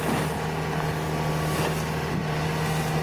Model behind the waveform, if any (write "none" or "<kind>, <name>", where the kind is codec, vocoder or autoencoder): none